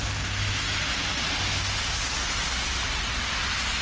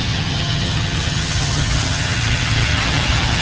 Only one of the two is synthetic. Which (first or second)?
second